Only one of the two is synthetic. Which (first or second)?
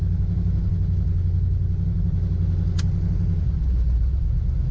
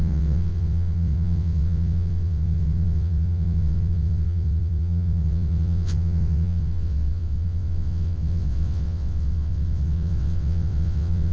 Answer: second